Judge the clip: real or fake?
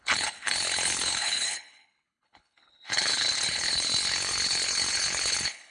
fake